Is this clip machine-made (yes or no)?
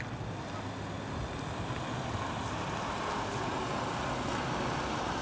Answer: no